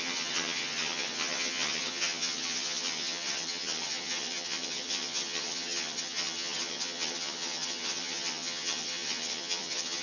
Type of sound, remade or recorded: remade